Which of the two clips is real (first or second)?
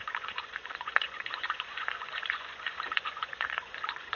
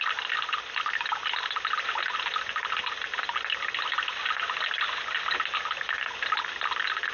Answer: second